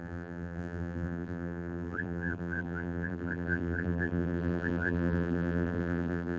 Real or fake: fake